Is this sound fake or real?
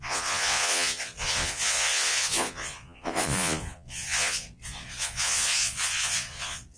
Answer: fake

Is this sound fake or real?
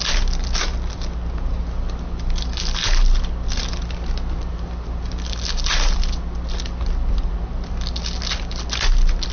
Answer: real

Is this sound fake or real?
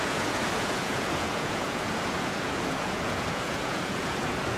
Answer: fake